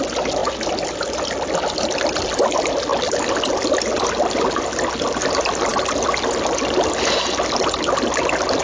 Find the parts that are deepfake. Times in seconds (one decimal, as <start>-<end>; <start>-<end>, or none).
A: none